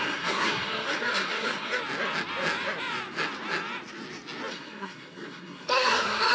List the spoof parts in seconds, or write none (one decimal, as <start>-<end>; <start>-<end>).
0.0-1.8; 4.5-6.3